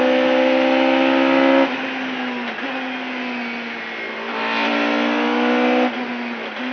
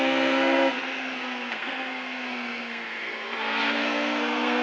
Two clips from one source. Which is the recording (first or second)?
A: first